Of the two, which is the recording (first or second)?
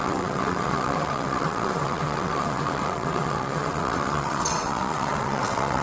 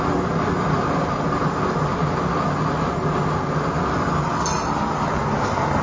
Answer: second